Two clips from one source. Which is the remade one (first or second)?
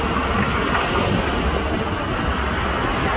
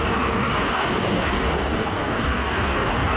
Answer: second